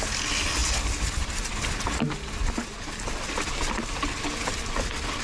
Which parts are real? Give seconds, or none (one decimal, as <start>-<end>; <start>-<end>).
0.0-5.2